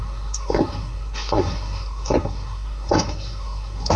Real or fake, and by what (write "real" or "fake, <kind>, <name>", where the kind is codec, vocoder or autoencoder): fake, codec, SNAC